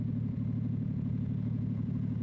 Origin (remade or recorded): remade